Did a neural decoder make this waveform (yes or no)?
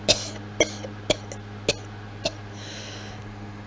no